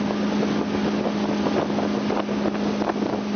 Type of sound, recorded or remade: recorded